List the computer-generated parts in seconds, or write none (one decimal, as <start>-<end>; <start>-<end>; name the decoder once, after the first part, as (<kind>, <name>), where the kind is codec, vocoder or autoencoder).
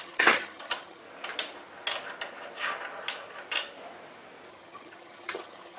0.0-1.0 (vocoder, HiFi-GAN); 4.5-5.8